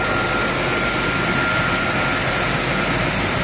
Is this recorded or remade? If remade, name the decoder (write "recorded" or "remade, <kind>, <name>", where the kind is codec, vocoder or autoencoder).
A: recorded